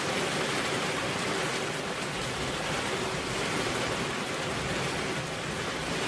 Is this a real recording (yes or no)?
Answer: yes